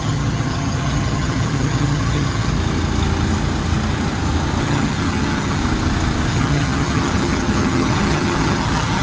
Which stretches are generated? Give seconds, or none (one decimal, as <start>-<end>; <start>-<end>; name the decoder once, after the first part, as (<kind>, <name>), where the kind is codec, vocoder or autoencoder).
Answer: 0.0-2.5 (vocoder, HiFi-GAN); 4.6-5.6; 6.3-9.0